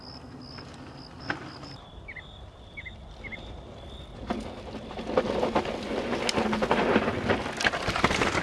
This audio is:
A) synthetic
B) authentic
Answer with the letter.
B